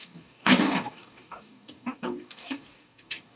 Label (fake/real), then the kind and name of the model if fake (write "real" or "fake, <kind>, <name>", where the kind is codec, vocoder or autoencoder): fake, codec, DAC